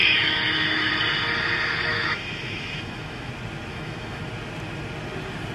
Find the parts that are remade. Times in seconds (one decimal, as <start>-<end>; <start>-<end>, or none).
0.0-0.9; 1.9-3.3; 3.7-4.2